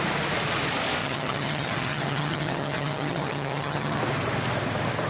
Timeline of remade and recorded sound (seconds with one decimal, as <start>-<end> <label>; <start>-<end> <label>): 0.0-1.0 recorded; 1.0-4.0 remade; 4.0-5.1 recorded